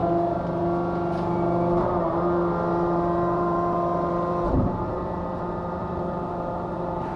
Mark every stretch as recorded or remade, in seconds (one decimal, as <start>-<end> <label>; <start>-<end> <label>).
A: 0.0-2.7 recorded; 2.7-7.2 remade

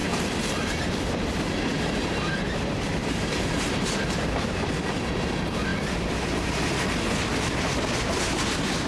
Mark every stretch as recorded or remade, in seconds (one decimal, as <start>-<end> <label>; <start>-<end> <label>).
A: 0.0-0.9 remade; 0.9-1.7 recorded; 1.7-4.8 remade; 4.8-8.9 recorded

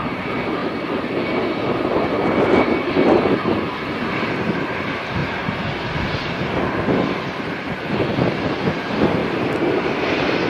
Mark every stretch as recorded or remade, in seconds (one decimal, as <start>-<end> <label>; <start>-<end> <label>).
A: 0.0-0.6 remade; 0.6-4.8 recorded; 4.8-5.2 remade; 5.2-7.1 recorded; 7.1-8.1 remade; 8.1-8.7 recorded; 8.7-9.2 remade; 9.2-10.1 recorded; 10.1-10.5 remade